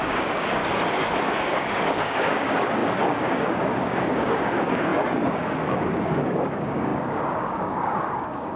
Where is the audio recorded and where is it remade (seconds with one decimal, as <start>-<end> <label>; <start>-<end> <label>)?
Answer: 0.0-0.6 remade; 0.6-1.2 recorded; 1.2-8.6 remade